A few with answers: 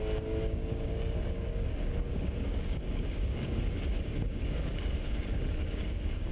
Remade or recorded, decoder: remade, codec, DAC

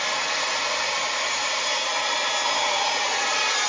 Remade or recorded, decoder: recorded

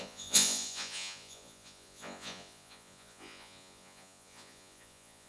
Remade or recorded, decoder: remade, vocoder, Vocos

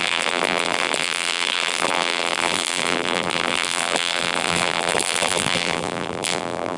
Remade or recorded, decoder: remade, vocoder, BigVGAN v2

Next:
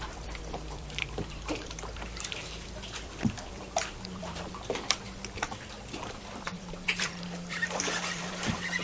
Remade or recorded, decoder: remade, vocoder, BigVGAN v2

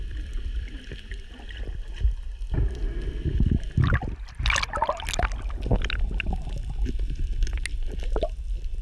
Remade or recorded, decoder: recorded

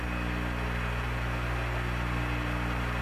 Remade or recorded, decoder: recorded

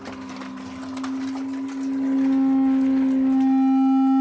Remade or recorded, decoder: recorded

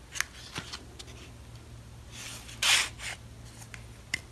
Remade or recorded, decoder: recorded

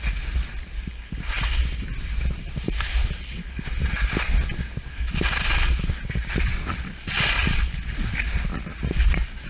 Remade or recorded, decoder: recorded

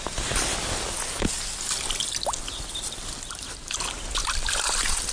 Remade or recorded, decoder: recorded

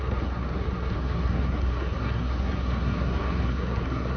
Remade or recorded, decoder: remade, codec, SNAC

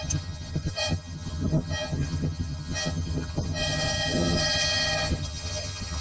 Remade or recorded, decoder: remade, vocoder, HiFi-GAN